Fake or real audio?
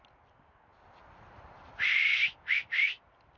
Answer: real